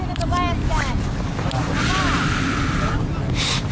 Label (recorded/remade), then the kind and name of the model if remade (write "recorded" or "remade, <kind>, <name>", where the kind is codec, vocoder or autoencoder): recorded